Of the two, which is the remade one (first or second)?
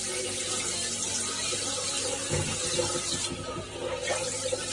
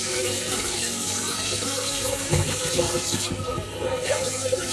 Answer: second